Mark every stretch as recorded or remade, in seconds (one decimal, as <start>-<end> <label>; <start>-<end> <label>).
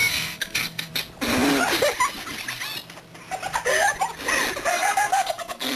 0.0-0.9 remade; 0.9-4.7 recorded; 4.7-5.8 remade